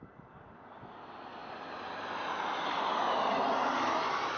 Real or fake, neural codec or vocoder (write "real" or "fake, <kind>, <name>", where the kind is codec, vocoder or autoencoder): real